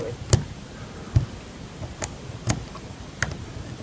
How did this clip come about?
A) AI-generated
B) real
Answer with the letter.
B